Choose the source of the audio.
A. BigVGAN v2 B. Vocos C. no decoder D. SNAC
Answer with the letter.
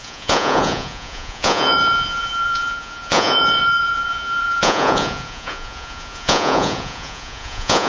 B